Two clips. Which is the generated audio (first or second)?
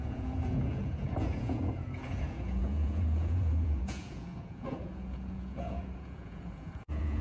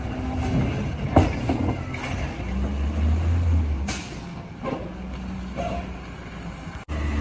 first